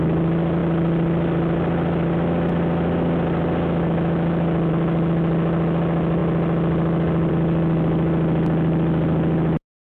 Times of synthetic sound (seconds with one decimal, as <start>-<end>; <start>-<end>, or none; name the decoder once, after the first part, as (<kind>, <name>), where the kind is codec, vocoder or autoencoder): none